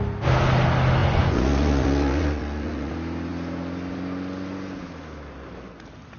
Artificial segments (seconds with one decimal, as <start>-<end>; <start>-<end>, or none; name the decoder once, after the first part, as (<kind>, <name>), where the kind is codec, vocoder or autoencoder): 1.0-2.9 (vocoder, Vocos)